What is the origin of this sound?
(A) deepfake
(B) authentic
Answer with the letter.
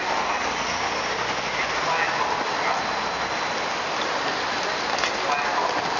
B